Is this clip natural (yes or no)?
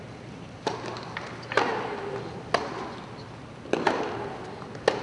yes